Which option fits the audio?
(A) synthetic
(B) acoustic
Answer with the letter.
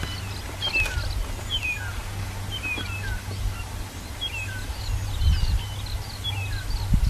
B